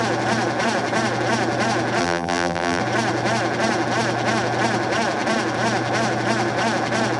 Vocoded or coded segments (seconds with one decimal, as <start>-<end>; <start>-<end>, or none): 2.0-2.8